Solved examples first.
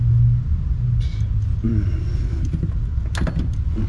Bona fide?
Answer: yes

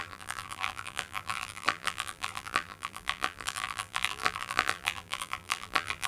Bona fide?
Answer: no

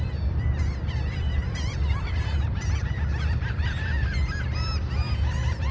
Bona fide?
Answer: no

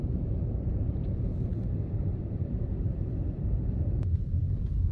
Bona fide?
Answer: no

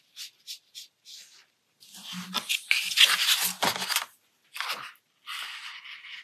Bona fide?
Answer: yes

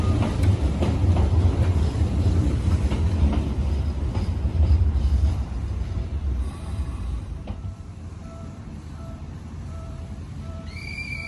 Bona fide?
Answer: no